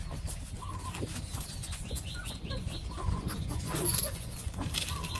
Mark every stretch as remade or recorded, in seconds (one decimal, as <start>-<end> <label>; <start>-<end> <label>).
0.0-1.6 recorded; 1.6-4.7 remade; 4.7-5.2 recorded